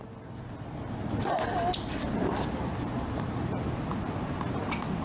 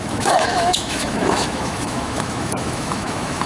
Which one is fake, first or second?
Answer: second